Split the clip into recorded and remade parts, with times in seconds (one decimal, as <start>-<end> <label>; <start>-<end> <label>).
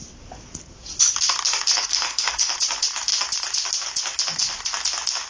0.0-1.9 recorded; 1.9-2.5 remade; 2.5-5.3 recorded